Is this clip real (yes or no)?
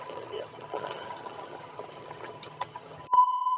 no